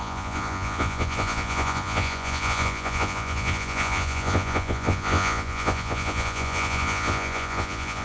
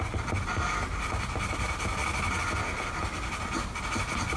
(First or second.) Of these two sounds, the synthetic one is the first